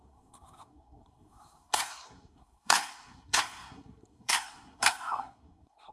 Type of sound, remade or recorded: remade